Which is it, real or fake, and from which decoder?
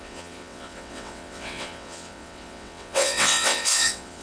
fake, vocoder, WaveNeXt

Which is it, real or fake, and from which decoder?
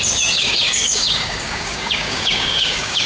fake, codec, DAC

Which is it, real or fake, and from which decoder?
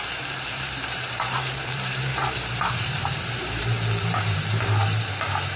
fake, vocoder, BigVGAN v2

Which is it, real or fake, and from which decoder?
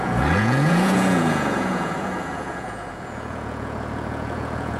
fake, vocoder, Vocos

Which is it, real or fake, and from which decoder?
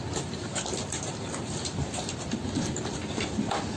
real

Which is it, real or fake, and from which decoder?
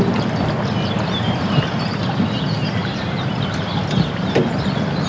real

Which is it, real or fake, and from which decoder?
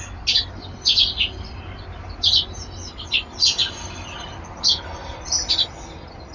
real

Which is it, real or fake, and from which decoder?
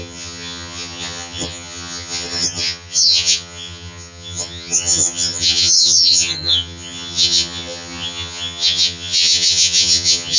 fake, vocoder, HiFi-GAN